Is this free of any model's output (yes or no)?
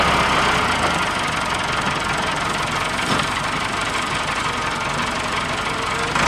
yes